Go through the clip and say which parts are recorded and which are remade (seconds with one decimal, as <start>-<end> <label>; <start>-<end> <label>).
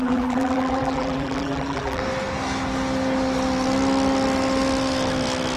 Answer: 0.0-2.0 remade; 2.0-5.6 recorded